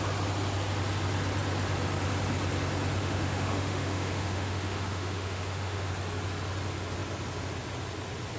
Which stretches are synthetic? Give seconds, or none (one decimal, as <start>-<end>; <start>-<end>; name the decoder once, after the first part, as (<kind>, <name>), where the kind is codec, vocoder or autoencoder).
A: 3.0-5.9 (autoencoder, DAC-VAE)